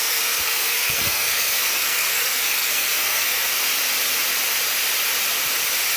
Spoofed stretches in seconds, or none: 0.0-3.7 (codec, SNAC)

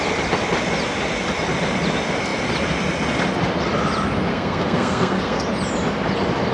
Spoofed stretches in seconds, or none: 4.3-5.4 (codec, SNAC)

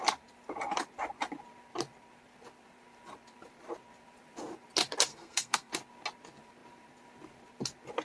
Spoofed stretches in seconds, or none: 5.1-5.7 (codec, SNAC)

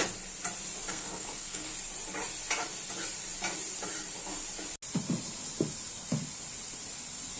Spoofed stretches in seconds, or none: 0.9-1.7 (codec, SNAC)

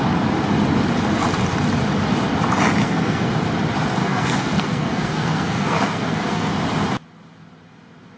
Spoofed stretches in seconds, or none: 2.8-3.3 (codec, SNAC); 4.0-6.5